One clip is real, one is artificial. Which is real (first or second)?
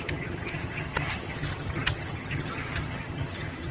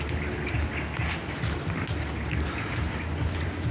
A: second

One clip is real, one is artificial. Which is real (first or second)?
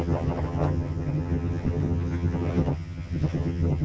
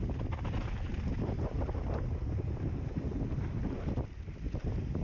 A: second